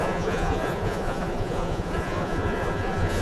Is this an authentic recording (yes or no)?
no